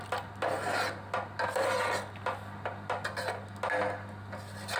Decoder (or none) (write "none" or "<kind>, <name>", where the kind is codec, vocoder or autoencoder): none